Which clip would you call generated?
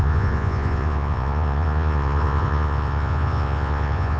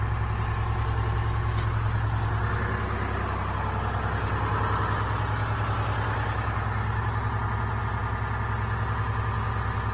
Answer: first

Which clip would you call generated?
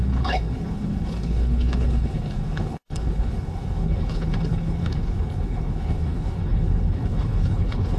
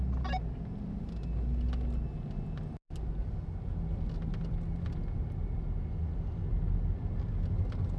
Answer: first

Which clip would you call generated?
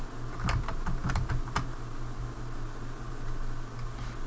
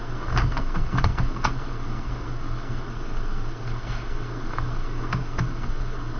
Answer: second